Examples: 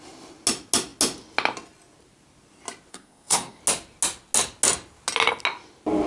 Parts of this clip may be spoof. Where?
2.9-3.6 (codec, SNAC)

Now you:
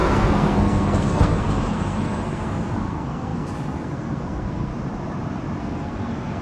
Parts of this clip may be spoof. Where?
0.0-4.7 (codec, SNAC); 5.6-6.4

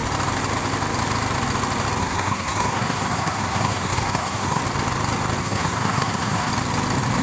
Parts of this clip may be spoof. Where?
2.0-4.6 (codec, SNAC); 5.4-6.5

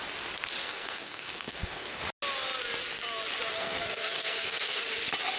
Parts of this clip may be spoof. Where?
0.6-2.0 (codec, SNAC); 3.5-4.8